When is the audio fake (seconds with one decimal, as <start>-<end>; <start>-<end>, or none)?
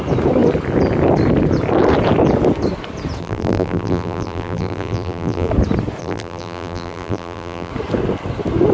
3.2-5.5; 6.0-7.7